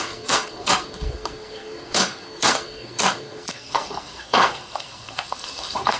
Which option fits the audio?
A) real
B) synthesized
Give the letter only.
B